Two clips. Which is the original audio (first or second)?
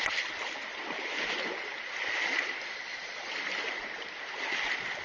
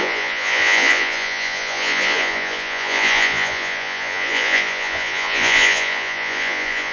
first